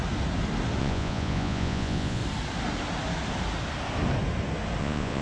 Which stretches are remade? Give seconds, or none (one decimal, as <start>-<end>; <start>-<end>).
0.8-2.2; 4.8-5.2